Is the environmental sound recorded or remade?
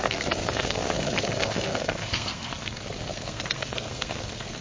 remade